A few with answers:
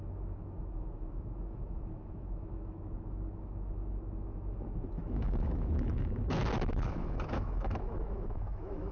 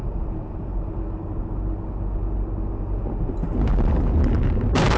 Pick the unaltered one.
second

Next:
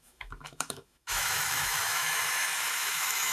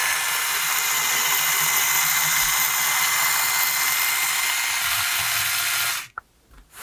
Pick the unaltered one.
second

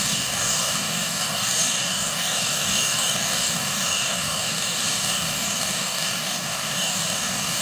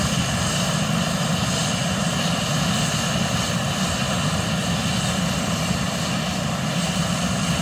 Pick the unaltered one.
second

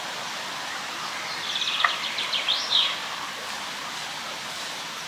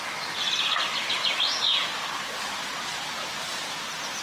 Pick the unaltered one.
second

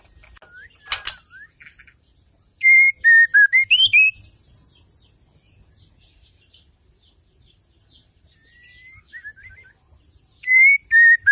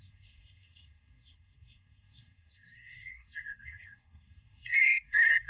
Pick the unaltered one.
first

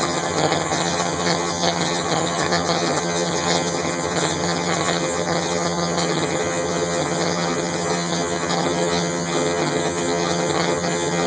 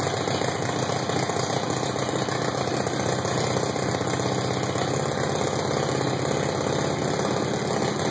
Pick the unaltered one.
second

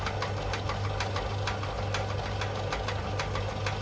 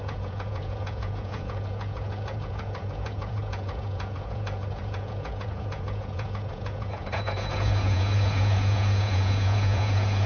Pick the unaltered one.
first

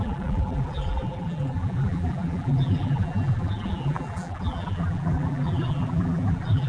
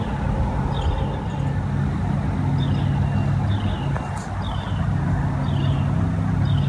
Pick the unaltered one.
second